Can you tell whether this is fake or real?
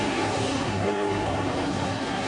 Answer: fake